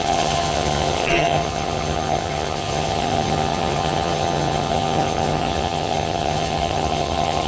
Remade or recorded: remade